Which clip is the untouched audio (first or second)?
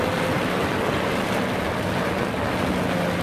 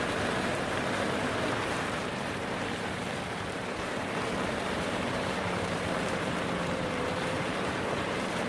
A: first